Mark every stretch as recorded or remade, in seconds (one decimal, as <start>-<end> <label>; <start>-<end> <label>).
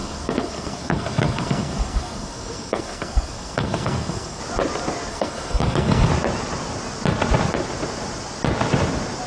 0.0-4.4 remade; 4.4-5.1 recorded; 5.1-6.1 remade; 6.1-9.3 recorded